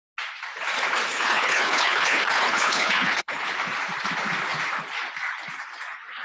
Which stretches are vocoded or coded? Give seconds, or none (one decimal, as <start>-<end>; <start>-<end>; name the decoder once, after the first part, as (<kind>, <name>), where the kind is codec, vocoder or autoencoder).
1.1-3.5 (codec, HILCodec)